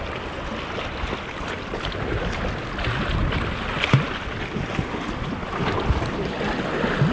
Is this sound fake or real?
real